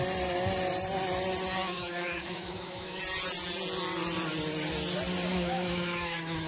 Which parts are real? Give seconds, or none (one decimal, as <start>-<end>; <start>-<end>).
0.0-1.6; 3.0-5.3